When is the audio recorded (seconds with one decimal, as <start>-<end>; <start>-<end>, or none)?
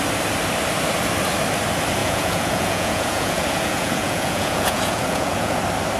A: 0.0-2.0; 5.6-6.0